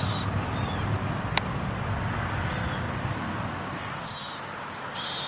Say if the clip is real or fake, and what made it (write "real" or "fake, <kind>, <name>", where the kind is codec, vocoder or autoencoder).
real